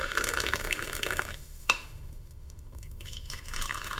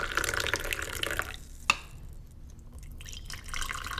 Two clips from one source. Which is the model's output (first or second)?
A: first